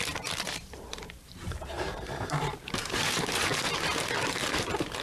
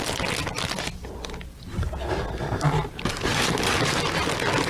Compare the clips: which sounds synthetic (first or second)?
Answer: first